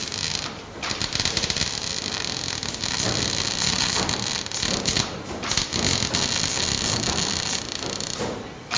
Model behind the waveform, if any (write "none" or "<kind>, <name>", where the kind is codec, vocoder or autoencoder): none